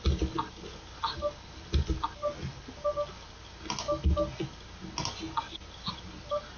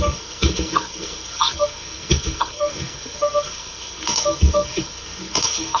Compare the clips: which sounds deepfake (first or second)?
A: second